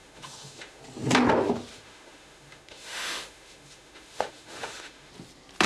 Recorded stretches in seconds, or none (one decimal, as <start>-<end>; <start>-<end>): 0.8-1.7; 5.1-5.7